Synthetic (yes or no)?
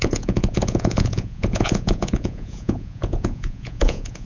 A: yes